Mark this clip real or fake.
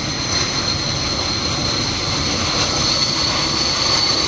real